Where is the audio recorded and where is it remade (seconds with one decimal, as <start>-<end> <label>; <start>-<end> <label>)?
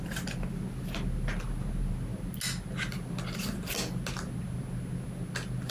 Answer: 0.0-5.7 recorded